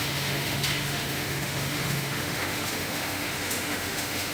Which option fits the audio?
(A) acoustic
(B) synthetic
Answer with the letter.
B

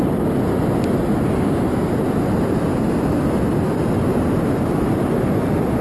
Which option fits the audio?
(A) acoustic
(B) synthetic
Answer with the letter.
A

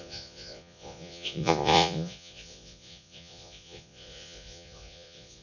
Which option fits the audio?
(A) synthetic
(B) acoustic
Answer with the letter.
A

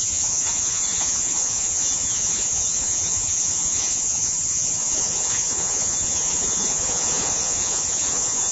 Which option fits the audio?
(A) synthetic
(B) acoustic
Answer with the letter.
A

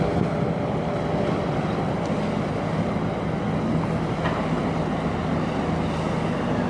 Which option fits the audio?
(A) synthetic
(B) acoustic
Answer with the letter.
B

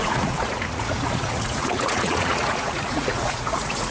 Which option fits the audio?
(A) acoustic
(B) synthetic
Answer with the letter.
B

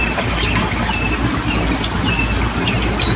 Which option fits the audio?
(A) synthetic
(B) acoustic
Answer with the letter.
B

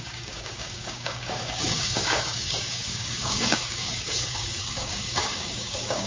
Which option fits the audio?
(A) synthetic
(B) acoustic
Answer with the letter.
A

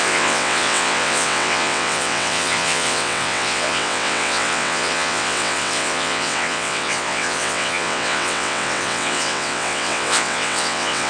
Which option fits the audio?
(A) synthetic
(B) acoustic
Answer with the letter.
A